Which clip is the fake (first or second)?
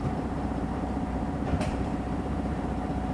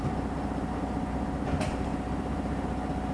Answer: first